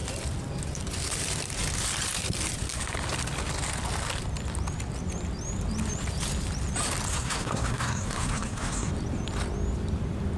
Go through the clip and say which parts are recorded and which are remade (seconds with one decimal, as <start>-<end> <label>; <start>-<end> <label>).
0.0-7.1 recorded; 7.1-8.9 remade; 8.9-10.4 recorded